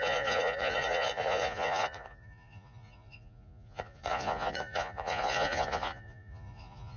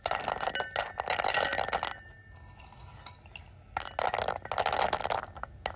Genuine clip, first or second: second